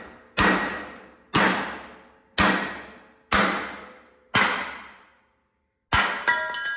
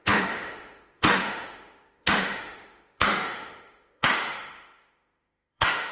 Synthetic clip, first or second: second